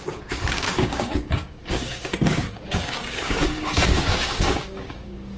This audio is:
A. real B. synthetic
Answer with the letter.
B